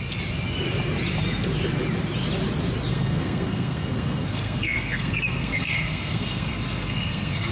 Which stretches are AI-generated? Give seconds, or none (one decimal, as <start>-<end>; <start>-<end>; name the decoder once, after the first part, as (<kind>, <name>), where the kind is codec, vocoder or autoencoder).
2.9-7.5 (codec, SNAC)